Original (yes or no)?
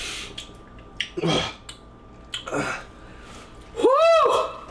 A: yes